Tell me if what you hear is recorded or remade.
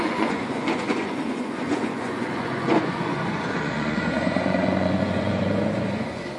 remade